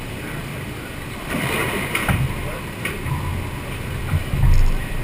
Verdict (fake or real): fake